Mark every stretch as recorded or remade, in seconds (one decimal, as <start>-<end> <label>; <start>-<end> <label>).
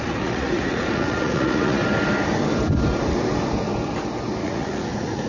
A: 0.0-1.8 remade; 1.8-4.4 recorded; 4.4-5.3 remade